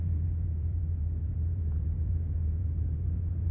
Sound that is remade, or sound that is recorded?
remade